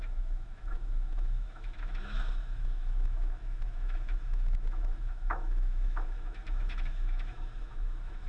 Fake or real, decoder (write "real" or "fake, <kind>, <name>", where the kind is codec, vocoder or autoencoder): fake, autoencoder, DAC-VAE